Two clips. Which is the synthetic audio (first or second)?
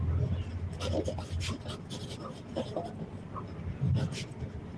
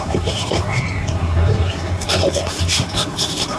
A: second